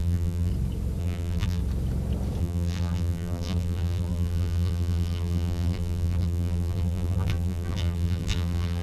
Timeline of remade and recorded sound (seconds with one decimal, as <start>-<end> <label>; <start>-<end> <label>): 0.0-0.5 remade; 0.5-1.0 recorded; 1.0-1.6 remade; 1.6-2.4 recorded; 2.4-8.8 remade